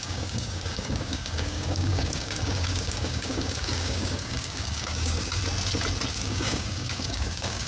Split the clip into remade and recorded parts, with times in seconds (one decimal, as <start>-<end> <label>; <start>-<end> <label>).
0.0-5.4 remade; 5.4-6.1 recorded; 6.1-7.7 remade